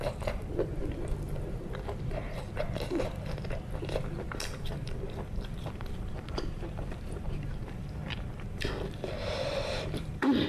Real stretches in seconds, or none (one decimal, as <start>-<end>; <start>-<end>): 0.7-4.3